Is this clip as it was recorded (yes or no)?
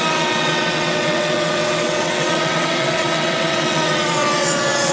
no